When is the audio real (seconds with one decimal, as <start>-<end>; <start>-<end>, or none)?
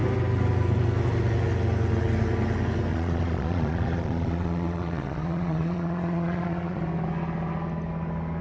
0.0-2.9; 6.8-8.4